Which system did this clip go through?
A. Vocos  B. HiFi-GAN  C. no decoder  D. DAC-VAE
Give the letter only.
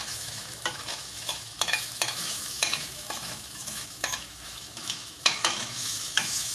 D